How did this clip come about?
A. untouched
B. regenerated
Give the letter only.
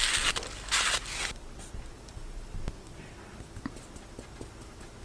A